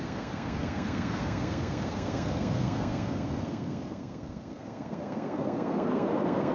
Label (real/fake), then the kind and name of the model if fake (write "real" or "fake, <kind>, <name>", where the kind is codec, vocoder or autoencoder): fake, codec, SNAC